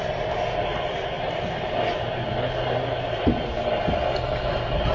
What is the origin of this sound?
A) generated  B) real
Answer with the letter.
B